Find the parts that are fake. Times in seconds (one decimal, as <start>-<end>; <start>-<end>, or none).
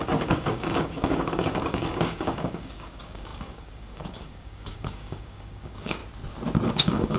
0.0-6.0; 6.7-7.2